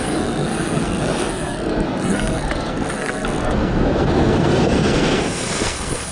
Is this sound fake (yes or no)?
yes